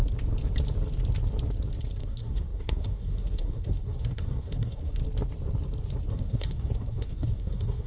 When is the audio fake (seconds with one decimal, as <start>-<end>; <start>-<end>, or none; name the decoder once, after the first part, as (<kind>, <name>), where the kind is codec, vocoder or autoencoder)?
2.0-5.0 (codec, SNAC); 6.1-7.9